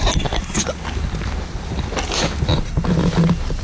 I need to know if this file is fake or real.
real